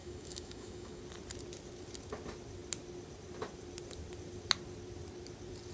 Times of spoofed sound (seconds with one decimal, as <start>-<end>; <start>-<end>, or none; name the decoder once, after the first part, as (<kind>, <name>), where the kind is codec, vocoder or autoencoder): 0.0-1.0 (autoencoder, DAC-VAE)